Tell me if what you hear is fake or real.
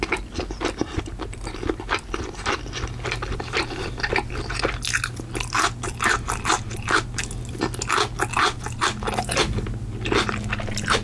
real